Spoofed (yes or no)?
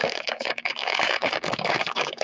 yes